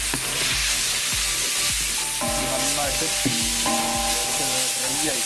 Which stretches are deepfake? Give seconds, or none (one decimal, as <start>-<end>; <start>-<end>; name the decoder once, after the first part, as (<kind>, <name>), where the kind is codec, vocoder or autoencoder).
none